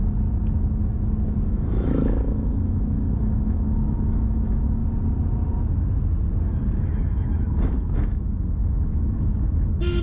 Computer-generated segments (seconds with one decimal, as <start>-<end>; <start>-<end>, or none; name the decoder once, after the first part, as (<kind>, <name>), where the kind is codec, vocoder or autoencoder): 1.5-4.8 (autoencoder, DAC-VAE); 6.8-10.0